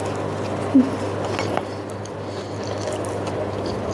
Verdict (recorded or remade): recorded